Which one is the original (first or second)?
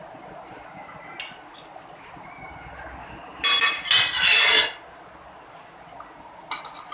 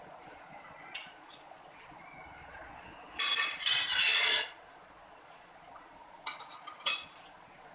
first